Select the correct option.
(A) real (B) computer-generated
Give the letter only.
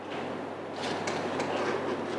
A